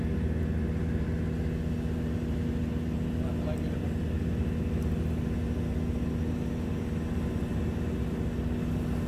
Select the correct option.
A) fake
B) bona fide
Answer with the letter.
B